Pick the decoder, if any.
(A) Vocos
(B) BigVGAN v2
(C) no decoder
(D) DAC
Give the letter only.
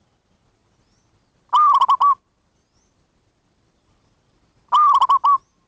C